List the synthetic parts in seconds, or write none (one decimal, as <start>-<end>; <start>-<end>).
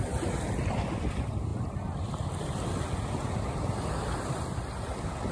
none